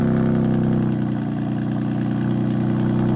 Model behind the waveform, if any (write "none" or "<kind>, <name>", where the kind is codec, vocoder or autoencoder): none